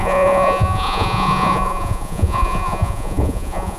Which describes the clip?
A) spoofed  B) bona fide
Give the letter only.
A